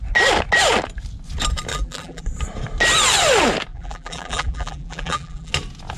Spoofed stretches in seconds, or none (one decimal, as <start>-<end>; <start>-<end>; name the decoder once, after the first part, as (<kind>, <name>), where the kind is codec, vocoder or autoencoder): 1.7-2.2 (vocoder, BigVGAN v2); 3.7-5.5